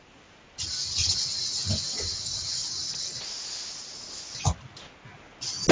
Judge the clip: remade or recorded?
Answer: recorded